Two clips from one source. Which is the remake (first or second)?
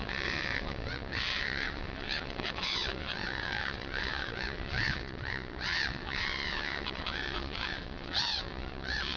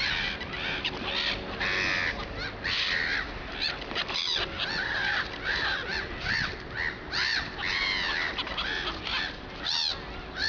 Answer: first